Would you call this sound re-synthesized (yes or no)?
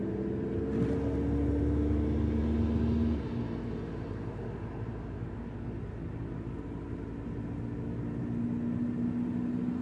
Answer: no